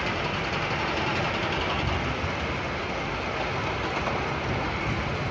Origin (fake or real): real